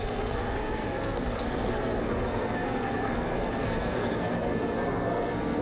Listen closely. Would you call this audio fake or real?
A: fake